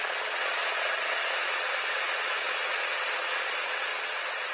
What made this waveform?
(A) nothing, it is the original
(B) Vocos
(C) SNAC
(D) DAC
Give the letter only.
B